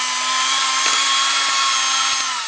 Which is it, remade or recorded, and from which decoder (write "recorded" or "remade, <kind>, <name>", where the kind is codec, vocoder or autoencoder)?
recorded